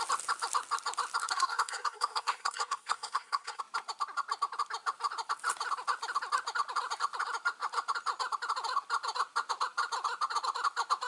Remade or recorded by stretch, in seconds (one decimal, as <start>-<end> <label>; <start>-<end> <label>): 0.0-1.2 recorded; 1.2-3.6 remade; 3.6-11.1 recorded